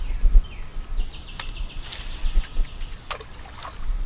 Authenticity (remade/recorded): recorded